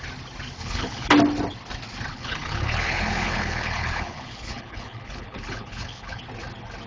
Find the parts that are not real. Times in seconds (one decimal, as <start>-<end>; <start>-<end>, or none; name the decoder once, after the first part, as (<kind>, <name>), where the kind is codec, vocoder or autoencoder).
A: 0.6-1.1 (codec, HILCodec); 2.1-6.2